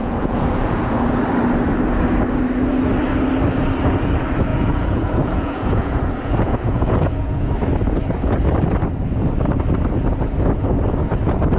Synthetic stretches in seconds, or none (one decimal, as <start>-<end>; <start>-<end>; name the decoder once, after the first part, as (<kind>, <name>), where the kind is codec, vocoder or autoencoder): 0.0-1.2 (vocoder, Vocos); 4.5-7.5